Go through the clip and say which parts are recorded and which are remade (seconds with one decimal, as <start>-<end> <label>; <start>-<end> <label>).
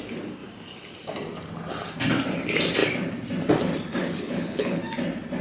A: 0.0-4.0 recorded; 4.0-4.8 remade; 4.8-5.4 recorded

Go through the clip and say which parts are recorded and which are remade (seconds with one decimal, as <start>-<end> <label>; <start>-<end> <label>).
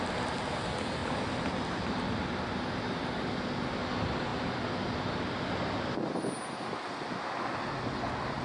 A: 0.0-1.0 recorded; 1.0-2.5 remade; 2.5-8.4 recorded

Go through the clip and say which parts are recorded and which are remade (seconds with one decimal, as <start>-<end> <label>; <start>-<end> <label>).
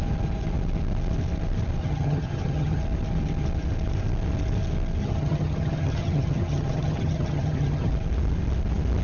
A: 0.0-1.8 recorded; 1.8-2.8 remade; 2.8-5.0 recorded; 5.0-7.9 remade; 7.9-9.0 recorded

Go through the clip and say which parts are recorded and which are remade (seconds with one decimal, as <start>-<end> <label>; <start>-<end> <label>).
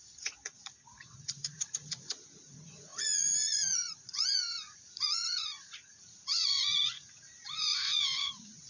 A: 0.0-8.7 remade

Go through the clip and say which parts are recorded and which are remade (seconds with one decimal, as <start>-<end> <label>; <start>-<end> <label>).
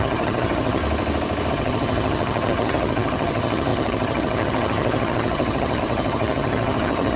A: 0.0-0.8 remade; 0.8-1.5 recorded; 1.5-7.2 remade